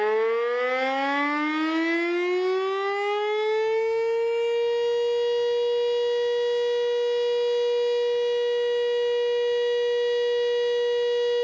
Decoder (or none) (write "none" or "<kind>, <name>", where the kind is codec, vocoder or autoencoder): none